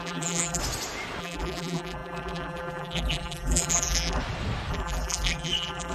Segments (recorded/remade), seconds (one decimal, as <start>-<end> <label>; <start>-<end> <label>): 0.0-0.6 remade; 0.6-1.2 recorded; 1.2-4.2 remade; 4.2-4.7 recorded; 4.7-5.9 remade